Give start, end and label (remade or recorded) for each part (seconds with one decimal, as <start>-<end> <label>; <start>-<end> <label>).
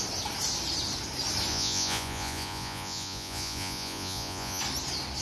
0.0-1.5 recorded; 1.5-4.6 remade; 4.6-5.2 recorded